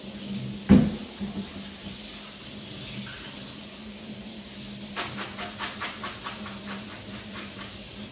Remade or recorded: recorded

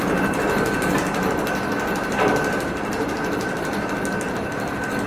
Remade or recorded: recorded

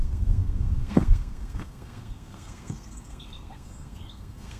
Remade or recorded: remade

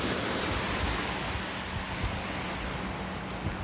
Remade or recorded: recorded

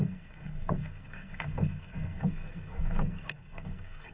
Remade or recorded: remade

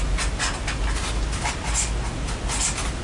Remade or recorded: recorded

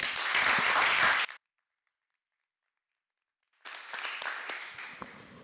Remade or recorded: recorded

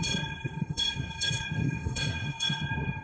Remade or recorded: remade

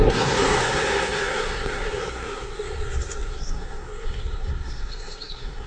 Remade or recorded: remade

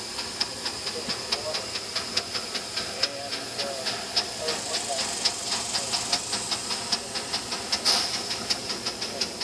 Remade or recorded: recorded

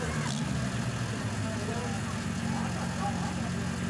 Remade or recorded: recorded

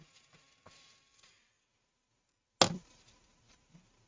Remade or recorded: recorded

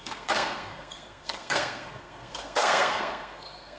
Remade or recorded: remade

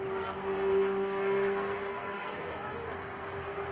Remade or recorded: remade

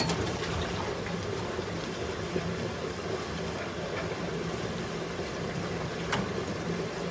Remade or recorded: recorded